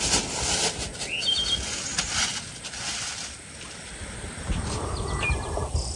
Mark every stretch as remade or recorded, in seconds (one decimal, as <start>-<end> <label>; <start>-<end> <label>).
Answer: 0.0-6.0 recorded